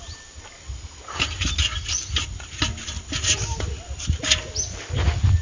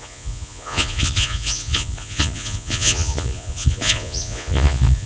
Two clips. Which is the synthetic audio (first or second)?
second